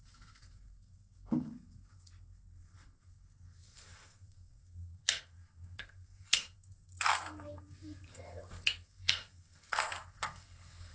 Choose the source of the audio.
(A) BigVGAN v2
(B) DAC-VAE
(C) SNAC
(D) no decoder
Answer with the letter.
C